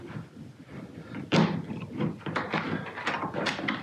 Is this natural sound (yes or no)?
yes